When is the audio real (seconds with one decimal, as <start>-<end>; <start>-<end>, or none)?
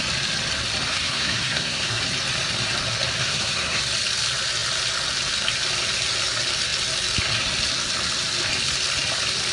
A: 0.0-0.9; 2.0-3.2; 3.8-9.5